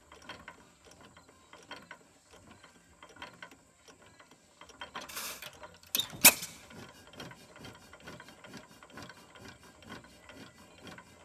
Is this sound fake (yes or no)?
no